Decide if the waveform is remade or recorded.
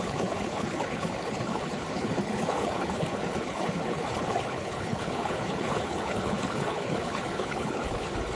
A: remade